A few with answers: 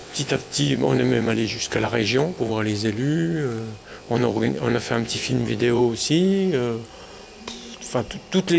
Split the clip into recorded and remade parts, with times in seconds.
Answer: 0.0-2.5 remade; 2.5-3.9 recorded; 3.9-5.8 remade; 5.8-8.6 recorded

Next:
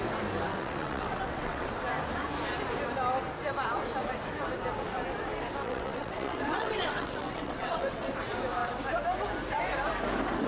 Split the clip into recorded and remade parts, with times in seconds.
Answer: 0.0-0.5 recorded; 0.5-1.7 remade; 1.7-5.6 recorded; 5.6-8.1 remade; 8.1-10.5 recorded

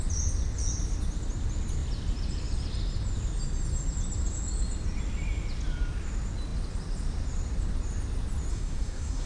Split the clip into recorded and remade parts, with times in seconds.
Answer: 0.0-8.5 recorded; 8.5-9.3 remade

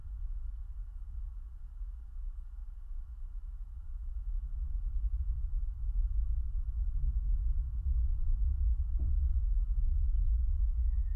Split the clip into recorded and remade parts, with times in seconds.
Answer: 0.0-11.2 recorded

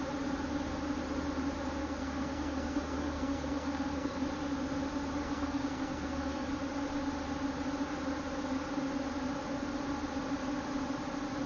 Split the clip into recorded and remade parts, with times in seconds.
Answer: 0.0-1.8 recorded; 1.8-4.2 remade; 4.2-5.2 recorded; 5.2-6.5 remade; 6.5-11.5 recorded

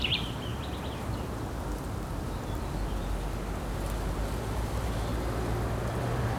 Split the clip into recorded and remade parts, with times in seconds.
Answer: 0.0-0.5 remade; 0.5-3.7 recorded; 3.7-5.1 remade; 5.1-6.0 recorded; 6.0-6.4 remade

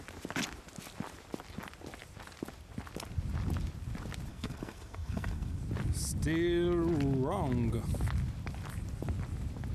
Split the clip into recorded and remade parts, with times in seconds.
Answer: 0.0-4.3 recorded; 4.3-5.6 remade; 5.6-9.7 recorded